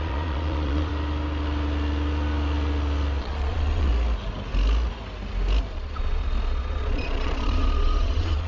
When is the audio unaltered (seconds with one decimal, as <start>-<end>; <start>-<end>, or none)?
0.9-3.2; 3.9-5.7